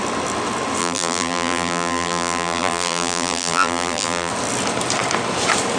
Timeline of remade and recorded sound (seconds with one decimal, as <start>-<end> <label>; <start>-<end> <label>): 0.0-0.8 recorded; 0.8-4.3 remade; 4.3-5.8 recorded